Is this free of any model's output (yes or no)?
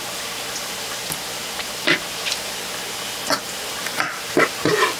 yes